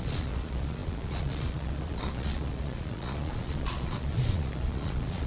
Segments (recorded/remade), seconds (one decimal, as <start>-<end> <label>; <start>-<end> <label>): 0.0-5.3 remade